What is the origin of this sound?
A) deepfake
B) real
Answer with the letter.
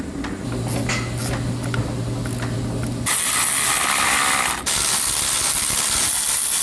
B